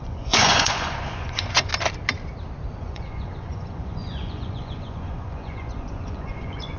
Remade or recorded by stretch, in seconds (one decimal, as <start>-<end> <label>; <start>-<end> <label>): 0.0-1.7 remade; 1.7-2.8 recorded; 2.8-6.8 remade